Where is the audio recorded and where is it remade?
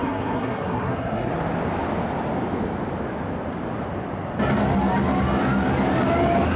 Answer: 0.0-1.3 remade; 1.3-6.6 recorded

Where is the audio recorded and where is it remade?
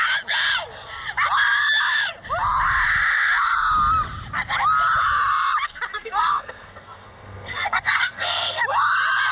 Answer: 0.0-5.9 recorded; 5.9-8.6 remade; 8.6-9.3 recorded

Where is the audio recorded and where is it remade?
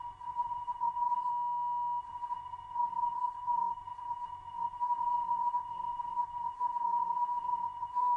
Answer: 0.0-1.3 remade; 1.3-2.0 recorded; 2.0-8.2 remade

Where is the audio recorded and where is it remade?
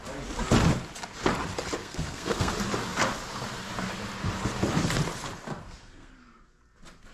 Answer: 0.0-1.8 recorded; 1.8-2.5 remade; 2.5-5.6 recorded; 5.6-6.1 remade; 6.1-7.1 recorded